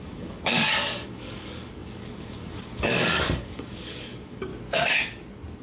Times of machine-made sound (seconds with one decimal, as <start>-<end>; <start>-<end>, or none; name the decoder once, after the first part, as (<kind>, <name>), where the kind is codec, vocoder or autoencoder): 0.0-4.5 (codec, DAC)